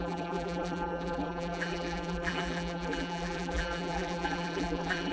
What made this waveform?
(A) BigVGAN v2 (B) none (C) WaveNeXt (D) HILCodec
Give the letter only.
A